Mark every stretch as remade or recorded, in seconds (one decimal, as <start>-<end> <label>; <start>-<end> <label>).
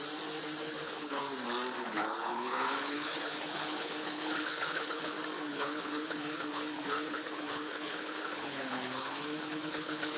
0.0-0.6 recorded; 0.6-1.2 remade; 1.2-1.8 recorded; 1.8-5.1 remade; 5.1-5.5 recorded; 5.5-10.2 remade